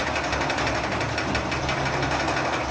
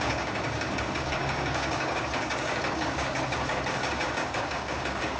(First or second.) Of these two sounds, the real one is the first